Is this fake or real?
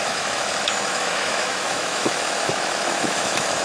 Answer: fake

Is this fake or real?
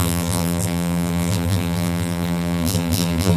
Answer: fake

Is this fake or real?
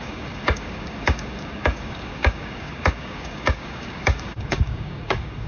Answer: fake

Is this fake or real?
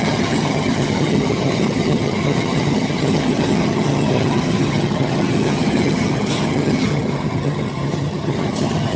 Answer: fake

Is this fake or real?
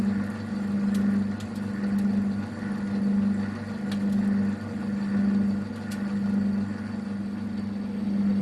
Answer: real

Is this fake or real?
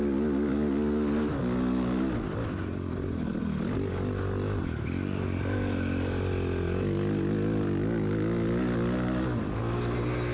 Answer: real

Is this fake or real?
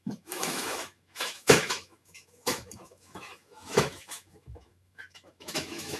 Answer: fake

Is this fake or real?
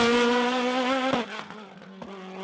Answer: real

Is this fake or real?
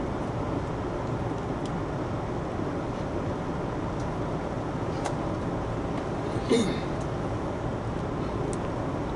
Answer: real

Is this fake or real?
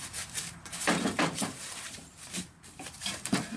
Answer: fake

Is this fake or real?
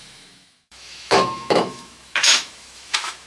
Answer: fake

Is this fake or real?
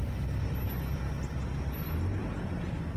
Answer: real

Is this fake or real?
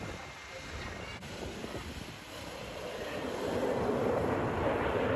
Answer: real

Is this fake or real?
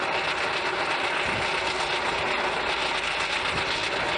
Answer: real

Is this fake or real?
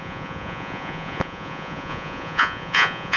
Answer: fake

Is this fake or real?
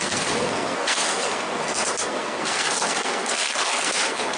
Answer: fake